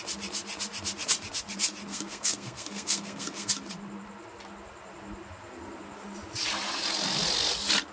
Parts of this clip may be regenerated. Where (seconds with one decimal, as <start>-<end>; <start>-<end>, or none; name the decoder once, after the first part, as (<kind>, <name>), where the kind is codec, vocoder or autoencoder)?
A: 1.9-3.5 (codec, SNAC)